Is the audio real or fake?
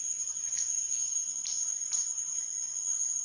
real